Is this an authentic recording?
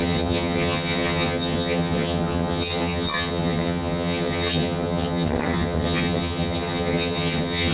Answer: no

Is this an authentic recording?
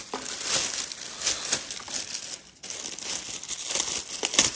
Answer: yes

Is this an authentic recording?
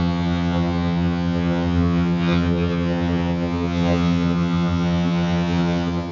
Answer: no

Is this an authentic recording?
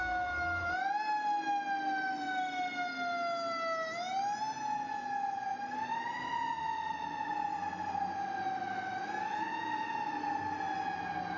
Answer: yes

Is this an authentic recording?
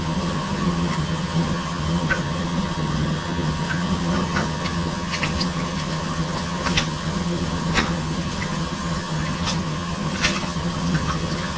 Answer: no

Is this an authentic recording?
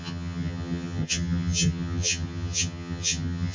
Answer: no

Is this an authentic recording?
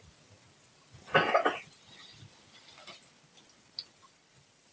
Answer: yes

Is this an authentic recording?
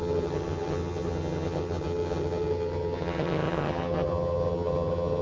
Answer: no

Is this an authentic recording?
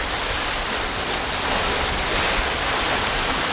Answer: yes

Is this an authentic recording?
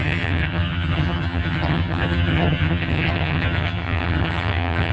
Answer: no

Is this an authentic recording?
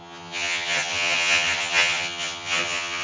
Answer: no